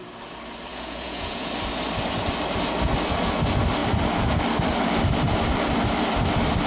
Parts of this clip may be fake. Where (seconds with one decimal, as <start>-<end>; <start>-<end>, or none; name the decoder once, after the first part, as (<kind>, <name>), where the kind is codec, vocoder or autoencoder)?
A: 0.7-1.5 (vocoder, Vocos)